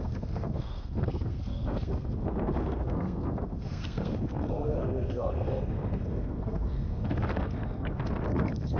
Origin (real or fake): fake